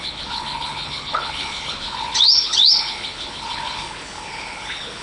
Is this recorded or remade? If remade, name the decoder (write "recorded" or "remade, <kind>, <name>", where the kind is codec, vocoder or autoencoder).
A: remade, codec, HILCodec